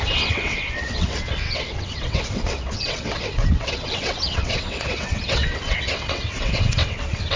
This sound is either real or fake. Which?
fake